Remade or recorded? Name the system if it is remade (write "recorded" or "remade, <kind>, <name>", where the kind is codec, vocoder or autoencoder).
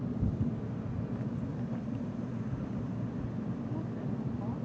recorded